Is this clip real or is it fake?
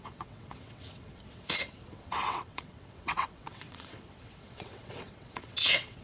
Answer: fake